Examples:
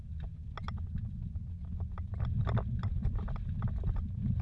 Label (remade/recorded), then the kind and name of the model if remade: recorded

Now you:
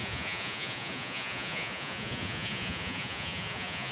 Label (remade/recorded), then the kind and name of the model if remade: remade, vocoder, Vocos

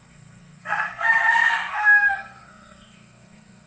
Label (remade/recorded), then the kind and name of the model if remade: remade, codec, SNAC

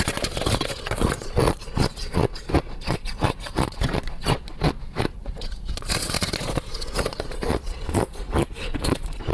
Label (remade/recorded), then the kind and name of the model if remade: remade, vocoder, Vocos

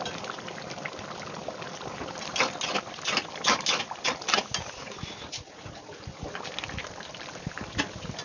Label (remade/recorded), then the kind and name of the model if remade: recorded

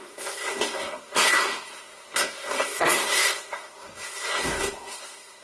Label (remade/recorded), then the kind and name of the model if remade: remade, codec, SNAC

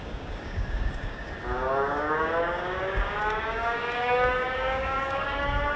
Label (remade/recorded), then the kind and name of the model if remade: remade, codec, DAC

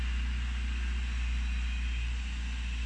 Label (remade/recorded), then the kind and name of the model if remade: recorded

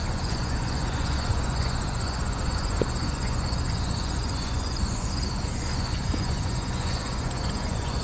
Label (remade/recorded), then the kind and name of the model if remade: remade, vocoder, Vocos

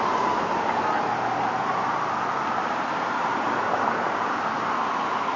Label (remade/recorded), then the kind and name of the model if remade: recorded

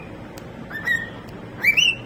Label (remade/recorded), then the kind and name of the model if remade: recorded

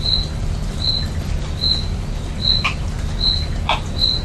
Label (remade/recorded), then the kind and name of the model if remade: recorded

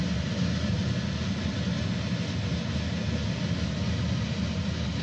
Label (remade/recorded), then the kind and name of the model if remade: recorded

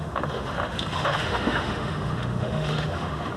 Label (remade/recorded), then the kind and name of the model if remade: remade, autoencoder, DAC-VAE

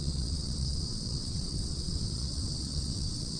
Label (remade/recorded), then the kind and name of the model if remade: remade, vocoder, WaveNeXt